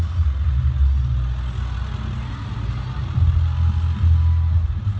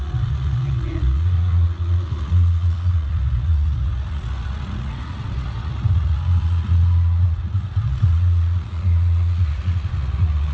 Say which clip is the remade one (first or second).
second